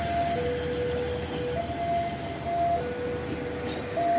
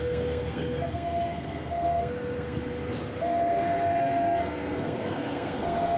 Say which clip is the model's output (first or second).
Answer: second